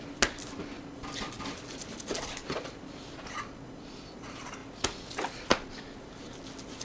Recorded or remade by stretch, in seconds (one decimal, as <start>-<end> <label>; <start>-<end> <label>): 0.0-6.8 recorded